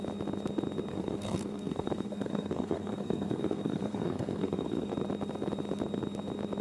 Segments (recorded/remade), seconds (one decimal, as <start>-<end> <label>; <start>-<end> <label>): 0.0-0.9 recorded; 0.9-4.9 remade; 4.9-6.6 recorded